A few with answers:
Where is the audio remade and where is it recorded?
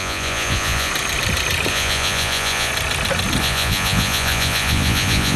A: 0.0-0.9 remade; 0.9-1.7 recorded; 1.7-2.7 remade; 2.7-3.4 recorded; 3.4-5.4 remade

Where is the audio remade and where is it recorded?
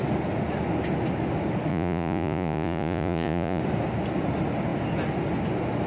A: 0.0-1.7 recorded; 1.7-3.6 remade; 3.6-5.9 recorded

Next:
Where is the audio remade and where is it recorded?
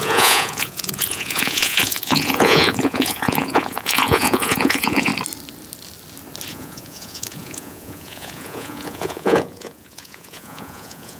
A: 0.0-5.1 remade; 5.1-6.5 recorded; 6.5-11.2 remade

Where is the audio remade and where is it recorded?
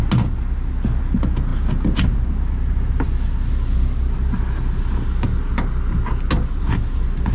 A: 0.0-7.3 recorded